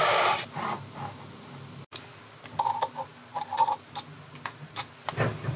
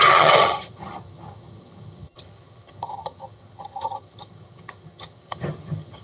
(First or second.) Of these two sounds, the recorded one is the first